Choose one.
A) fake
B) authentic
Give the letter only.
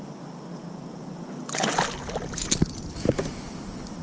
B